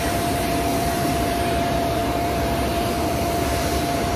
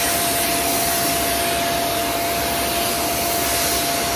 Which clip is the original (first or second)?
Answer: second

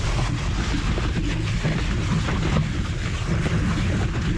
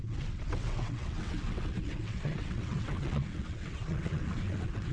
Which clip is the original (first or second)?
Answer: first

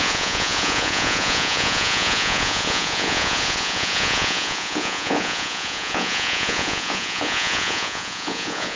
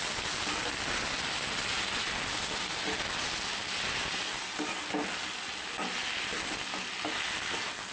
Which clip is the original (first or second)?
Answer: second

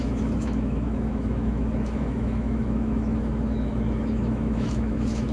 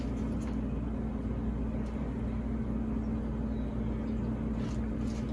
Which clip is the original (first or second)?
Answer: second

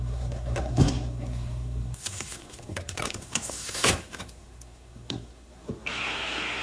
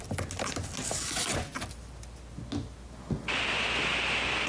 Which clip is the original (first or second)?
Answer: second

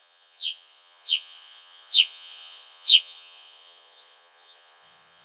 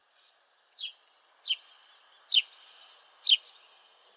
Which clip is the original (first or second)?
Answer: second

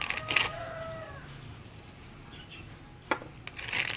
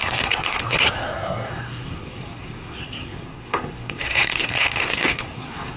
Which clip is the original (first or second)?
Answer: first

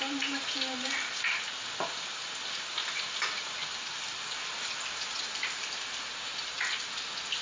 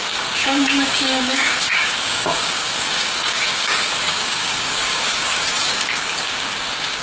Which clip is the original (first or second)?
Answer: first